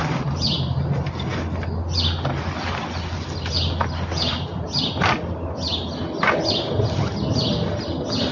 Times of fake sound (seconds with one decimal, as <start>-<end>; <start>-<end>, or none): none